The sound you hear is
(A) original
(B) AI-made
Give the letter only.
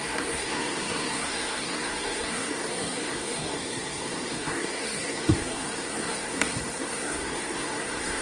B